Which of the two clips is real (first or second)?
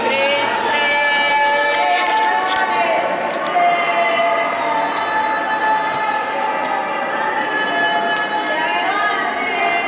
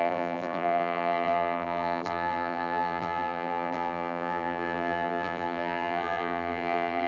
first